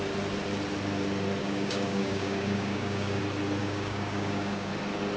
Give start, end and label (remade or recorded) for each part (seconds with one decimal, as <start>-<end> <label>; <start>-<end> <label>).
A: 0.0-1.4 recorded; 1.4-3.2 remade; 3.2-3.6 recorded; 3.6-4.7 remade; 4.7-5.2 recorded